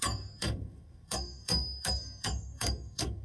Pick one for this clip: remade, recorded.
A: remade